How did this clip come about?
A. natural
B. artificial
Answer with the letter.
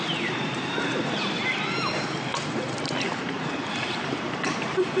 B